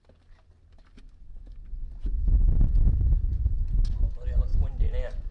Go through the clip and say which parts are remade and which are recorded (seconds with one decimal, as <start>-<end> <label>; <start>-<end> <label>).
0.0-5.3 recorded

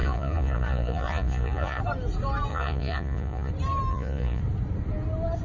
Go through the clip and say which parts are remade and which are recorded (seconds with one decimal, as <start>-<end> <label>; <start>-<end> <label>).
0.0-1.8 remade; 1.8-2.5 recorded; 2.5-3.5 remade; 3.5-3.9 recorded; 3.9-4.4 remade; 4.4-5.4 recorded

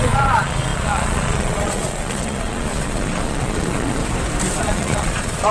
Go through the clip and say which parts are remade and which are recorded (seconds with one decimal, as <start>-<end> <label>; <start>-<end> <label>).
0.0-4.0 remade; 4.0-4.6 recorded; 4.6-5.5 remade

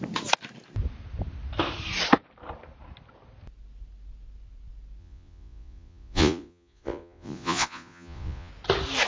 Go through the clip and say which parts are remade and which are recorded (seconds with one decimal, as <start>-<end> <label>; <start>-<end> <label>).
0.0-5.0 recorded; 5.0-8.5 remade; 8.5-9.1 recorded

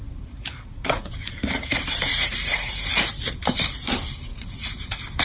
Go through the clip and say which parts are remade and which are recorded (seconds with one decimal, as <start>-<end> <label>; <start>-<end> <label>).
0.0-0.8 recorded; 0.8-1.3 remade; 1.3-2.1 recorded; 2.1-3.3 remade; 3.3-4.3 recorded; 4.3-4.8 remade; 4.8-5.2 recorded

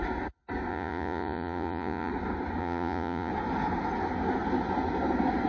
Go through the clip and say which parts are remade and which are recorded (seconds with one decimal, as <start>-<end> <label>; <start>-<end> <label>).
0.0-0.7 recorded; 0.7-2.1 remade; 2.1-2.6 recorded; 2.6-3.3 remade; 3.3-5.5 recorded